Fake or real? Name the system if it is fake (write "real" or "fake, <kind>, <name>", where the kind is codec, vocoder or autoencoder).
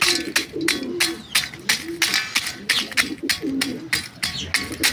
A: real